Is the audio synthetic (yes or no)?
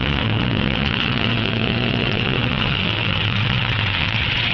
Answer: yes